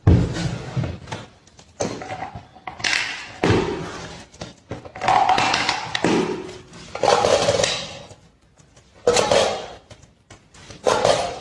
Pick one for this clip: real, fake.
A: real